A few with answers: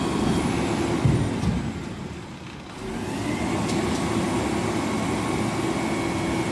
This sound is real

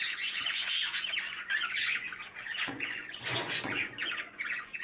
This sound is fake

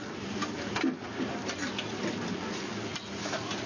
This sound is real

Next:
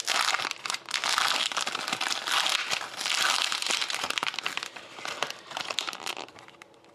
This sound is real